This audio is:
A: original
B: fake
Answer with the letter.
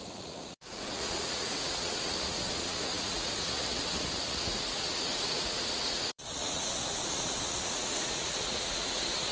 B